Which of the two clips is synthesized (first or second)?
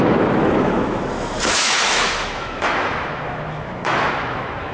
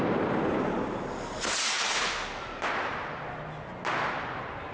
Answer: first